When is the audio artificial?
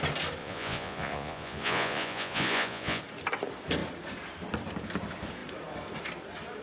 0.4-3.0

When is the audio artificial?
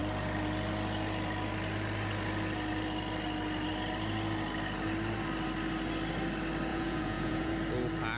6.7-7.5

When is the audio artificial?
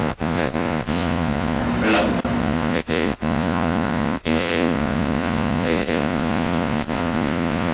0.0-1.6; 2.4-7.7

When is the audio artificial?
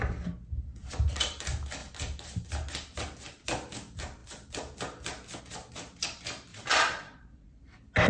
6.5-7.6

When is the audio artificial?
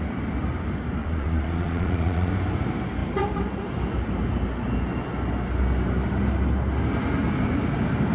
1.0-2.3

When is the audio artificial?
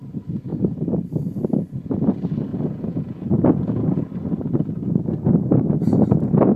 2.5-4.0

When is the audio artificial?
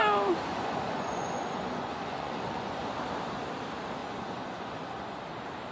0.5-2.9; 4.0-5.2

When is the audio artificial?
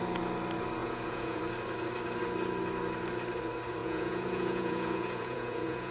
0.8-1.4; 3.8-5.9